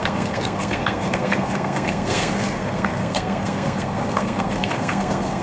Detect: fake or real fake